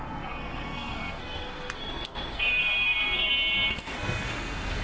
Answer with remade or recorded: remade